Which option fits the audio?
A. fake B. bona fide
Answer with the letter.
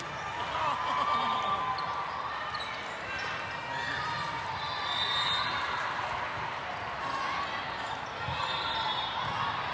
B